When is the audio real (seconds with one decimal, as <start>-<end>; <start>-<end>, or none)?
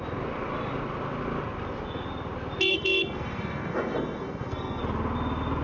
0.0-2.7; 4.8-5.6